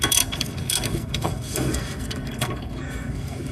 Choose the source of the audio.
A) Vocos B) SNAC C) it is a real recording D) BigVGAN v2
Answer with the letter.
B